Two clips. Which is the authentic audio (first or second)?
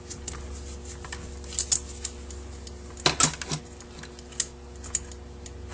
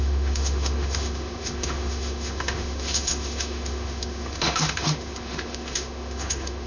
first